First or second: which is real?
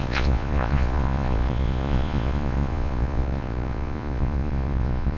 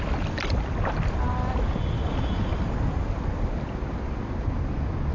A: second